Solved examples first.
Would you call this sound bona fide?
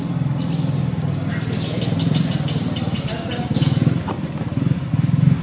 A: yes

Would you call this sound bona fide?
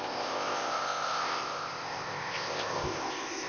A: no